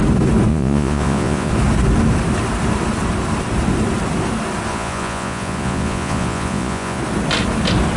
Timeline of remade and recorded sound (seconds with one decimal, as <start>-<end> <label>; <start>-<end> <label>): 0.0-0.5 recorded; 0.5-1.5 remade; 1.5-4.7 recorded; 4.7-7.0 remade; 7.0-8.0 recorded